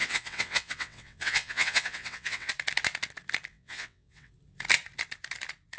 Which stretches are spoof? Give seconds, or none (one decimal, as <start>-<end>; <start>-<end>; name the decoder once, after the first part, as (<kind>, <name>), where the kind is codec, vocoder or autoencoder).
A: 0.0-2.5 (vocoder, WaveNeXt); 3.5-4.3